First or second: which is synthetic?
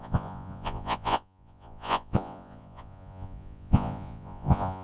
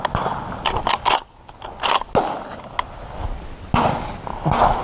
first